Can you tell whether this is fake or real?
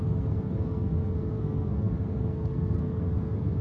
fake